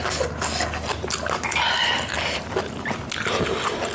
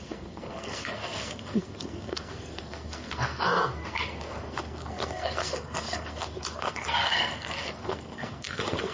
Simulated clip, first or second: second